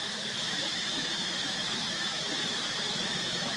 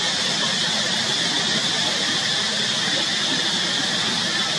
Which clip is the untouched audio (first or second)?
second